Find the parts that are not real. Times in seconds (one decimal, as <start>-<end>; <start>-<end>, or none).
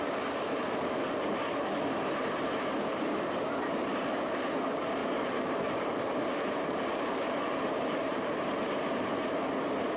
2.2-3.4; 5.0-9.4